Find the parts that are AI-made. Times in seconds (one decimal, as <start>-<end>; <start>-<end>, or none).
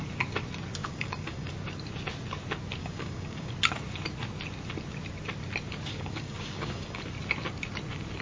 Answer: 0.8-1.5; 2.8-3.5; 5.9-7.0